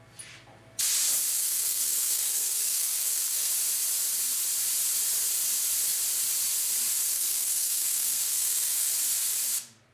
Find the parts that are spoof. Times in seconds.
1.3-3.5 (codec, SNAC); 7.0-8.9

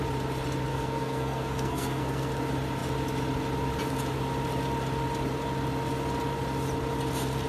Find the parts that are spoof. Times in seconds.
0.7-2.3 (codec, SNAC)

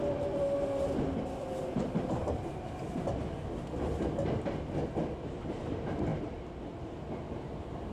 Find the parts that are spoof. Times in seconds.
none

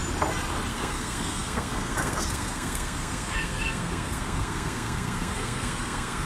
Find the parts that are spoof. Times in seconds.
0.7-6.3 (codec, SNAC)

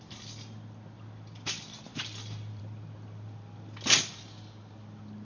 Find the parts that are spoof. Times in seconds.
none

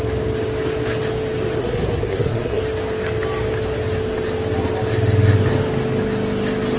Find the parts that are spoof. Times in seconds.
1.6-2.6 (codec, SNAC)

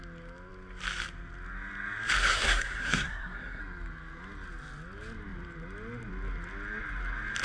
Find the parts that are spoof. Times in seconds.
2.2-3.6 (codec, SNAC)

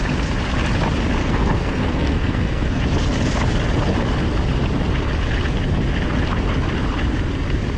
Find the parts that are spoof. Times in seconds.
1.2-2.8 (codec, SNAC)